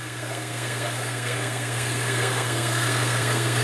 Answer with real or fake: fake